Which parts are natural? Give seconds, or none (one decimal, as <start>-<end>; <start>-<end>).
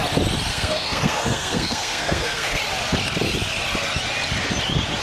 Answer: 0.0-0.5; 2.6-5.0